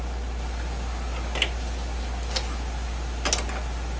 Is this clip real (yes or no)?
yes